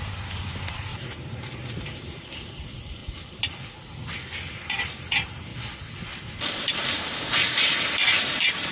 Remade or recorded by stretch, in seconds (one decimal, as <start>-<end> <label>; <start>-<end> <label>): 0.0-3.0 remade; 3.0-4.5 recorded; 4.5-5.5 remade; 5.5-6.5 recorded; 6.5-8.7 remade